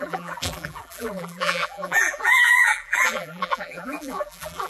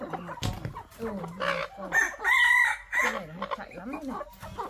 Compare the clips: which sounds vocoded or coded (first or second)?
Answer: first